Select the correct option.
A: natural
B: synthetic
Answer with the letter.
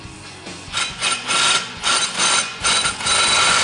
B